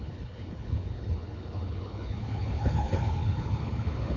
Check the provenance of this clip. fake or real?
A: fake